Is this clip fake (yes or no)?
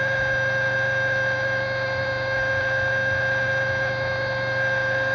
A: no